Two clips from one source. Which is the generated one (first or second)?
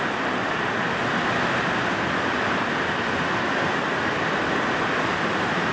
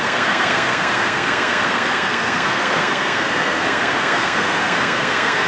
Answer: second